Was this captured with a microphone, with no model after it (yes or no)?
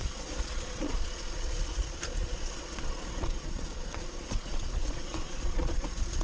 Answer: no